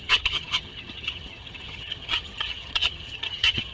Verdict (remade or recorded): remade